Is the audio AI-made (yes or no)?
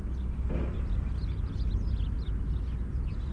no